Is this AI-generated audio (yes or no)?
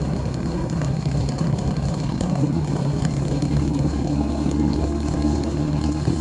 yes